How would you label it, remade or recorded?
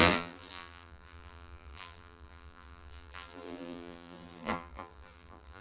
remade